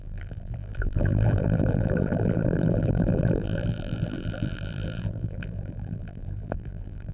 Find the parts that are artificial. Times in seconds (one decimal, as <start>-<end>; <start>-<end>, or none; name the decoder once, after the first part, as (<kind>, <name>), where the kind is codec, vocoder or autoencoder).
0.0-7.1 (vocoder, BigVGAN v2)